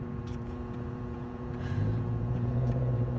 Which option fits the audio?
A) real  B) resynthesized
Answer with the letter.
B